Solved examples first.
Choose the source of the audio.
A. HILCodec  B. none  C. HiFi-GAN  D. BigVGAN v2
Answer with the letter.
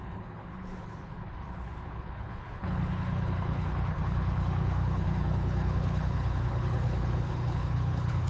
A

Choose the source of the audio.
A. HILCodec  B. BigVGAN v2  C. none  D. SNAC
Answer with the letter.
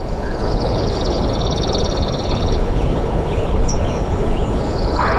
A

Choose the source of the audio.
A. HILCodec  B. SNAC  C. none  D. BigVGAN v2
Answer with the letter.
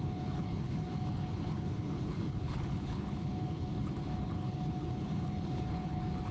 A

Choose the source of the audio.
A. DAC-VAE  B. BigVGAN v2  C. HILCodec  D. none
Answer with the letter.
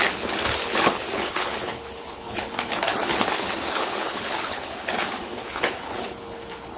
C